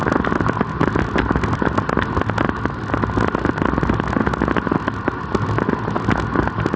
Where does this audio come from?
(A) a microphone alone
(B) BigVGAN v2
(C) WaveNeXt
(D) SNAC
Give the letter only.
A